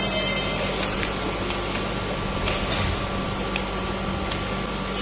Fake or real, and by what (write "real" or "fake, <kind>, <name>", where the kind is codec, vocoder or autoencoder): real